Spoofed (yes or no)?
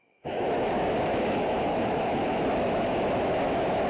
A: yes